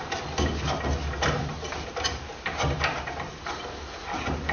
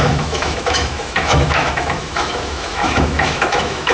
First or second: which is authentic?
first